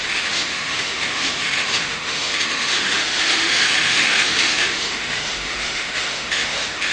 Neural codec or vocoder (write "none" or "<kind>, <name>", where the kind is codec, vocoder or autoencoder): autoencoder, DAC-VAE